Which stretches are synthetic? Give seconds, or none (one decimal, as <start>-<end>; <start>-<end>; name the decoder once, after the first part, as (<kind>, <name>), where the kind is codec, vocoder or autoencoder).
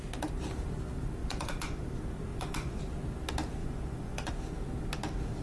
1.2-1.8 (vocoder, Vocos); 2.3-2.8; 3.6-4.3